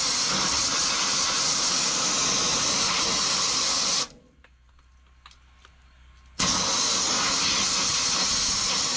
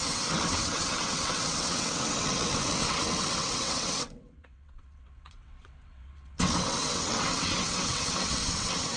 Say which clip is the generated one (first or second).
second